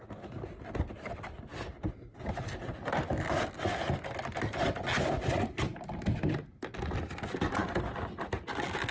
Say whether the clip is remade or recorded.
recorded